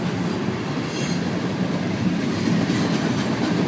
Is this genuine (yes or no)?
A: yes